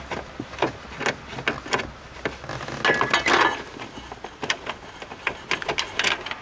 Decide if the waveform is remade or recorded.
recorded